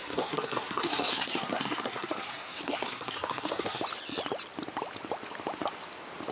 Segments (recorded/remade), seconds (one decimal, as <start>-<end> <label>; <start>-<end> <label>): 0.0-3.8 remade; 3.8-6.3 recorded